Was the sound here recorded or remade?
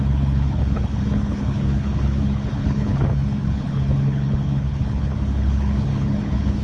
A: remade